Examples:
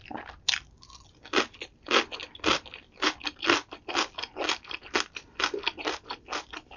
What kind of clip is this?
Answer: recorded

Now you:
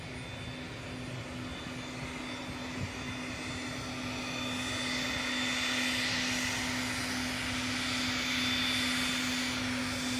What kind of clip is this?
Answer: recorded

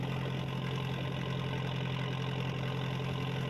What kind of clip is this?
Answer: recorded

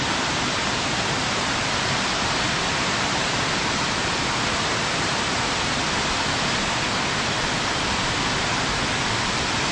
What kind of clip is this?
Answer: remade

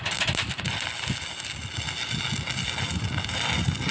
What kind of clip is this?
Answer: recorded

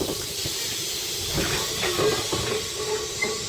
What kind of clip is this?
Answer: remade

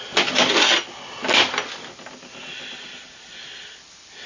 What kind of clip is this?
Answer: recorded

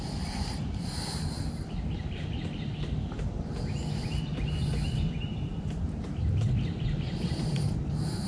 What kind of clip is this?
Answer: recorded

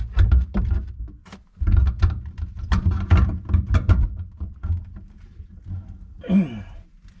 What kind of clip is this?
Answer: recorded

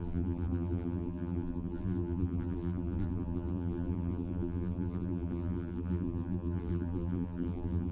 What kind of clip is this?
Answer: remade